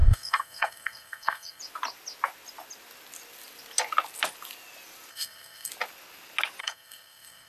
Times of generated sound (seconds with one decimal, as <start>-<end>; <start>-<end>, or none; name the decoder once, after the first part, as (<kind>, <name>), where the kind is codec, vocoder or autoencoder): 0.0-1.6 (codec, SNAC); 5.1-5.7; 6.6-7.5